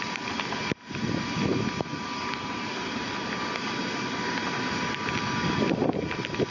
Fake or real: real